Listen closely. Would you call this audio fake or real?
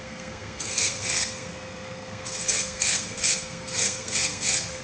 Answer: fake